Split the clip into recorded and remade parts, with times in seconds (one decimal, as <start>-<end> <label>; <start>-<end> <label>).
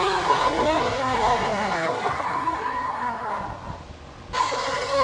0.0-3.3 remade; 3.3-4.4 recorded; 4.4-5.0 remade